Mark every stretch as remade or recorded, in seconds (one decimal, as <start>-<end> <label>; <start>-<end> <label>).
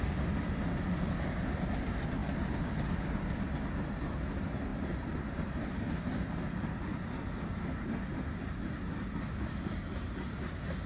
0.0-10.9 recorded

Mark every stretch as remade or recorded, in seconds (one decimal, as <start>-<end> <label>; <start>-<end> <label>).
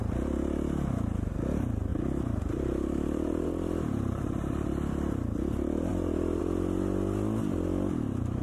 0.0-1.9 recorded; 1.9-4.9 remade; 4.9-8.4 recorded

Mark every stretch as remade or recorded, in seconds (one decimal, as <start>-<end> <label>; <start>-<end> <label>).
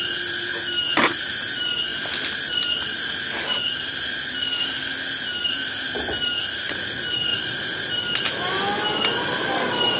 0.0-10.0 recorded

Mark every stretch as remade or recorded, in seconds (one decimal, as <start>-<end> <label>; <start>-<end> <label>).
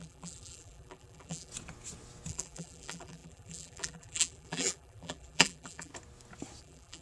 0.0-1.5 remade; 1.5-2.3 recorded; 2.3-5.9 remade; 5.9-6.6 recorded; 6.6-7.0 remade